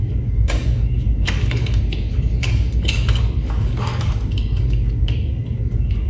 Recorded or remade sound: remade